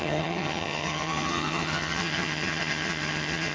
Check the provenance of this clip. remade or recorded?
remade